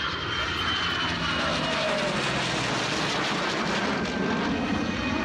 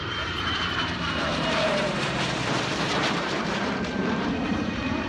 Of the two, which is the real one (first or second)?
first